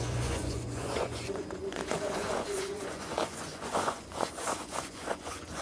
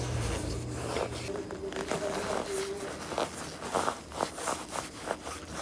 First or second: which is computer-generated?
first